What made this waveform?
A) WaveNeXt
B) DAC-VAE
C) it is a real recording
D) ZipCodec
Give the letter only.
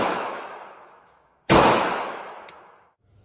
B